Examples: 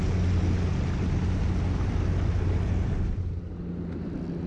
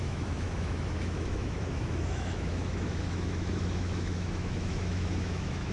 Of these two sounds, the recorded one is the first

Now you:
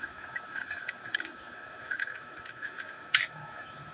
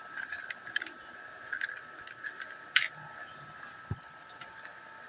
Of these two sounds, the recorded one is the second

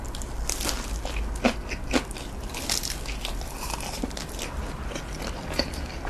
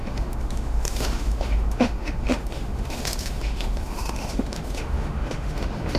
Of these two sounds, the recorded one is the first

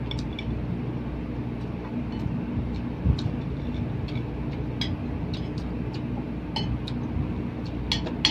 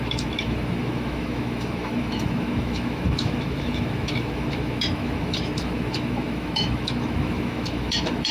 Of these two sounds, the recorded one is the first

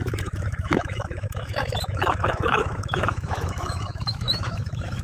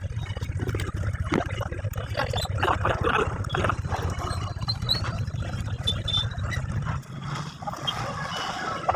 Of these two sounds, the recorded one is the second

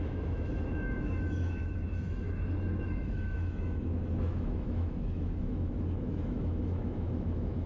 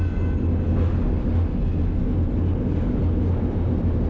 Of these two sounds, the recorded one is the second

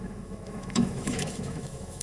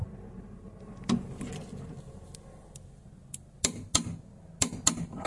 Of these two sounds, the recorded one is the second